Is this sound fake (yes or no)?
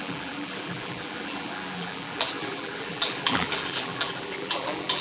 yes